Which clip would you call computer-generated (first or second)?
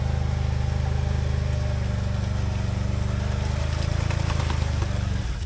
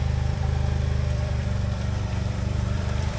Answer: second